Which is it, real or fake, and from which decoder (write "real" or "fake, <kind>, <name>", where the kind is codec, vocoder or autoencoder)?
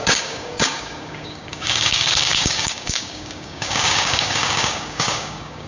fake, codec, DAC